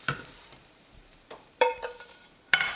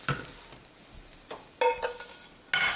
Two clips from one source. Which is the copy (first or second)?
first